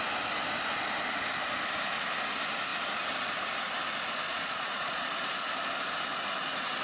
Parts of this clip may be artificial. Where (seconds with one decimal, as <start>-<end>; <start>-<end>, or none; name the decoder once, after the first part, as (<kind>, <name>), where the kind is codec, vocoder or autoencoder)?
4.3-5.1 (vocoder, Vocos)